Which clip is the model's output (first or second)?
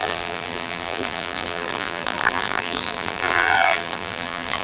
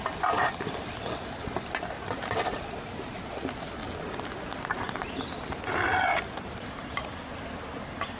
first